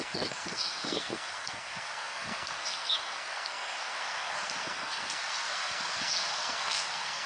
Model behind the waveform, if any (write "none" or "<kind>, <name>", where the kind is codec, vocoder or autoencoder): codec, SNAC